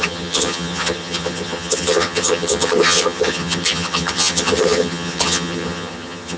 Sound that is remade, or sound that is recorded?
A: remade